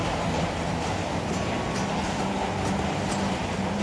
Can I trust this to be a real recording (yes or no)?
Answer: yes